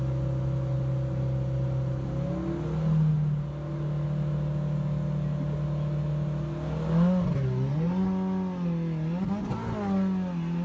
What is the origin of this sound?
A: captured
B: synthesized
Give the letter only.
A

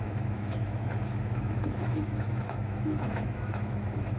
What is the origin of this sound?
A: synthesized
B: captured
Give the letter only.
A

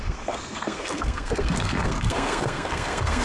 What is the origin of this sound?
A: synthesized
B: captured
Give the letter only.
A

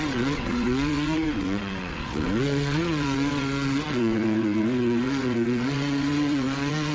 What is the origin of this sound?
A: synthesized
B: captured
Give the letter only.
A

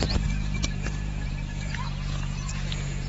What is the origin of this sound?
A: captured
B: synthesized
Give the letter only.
B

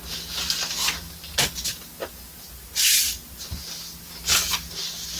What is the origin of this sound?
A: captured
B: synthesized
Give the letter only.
A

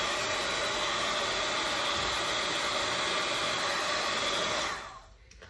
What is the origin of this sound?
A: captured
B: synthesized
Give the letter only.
A